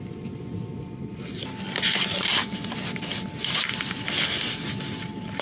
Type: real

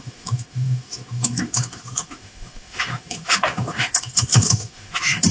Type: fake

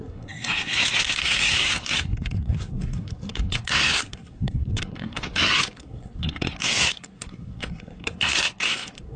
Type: fake